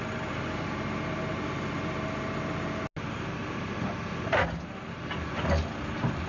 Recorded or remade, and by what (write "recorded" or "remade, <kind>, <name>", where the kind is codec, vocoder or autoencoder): recorded